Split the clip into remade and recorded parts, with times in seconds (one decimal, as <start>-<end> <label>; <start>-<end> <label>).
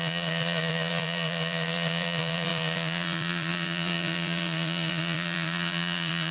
0.0-6.3 remade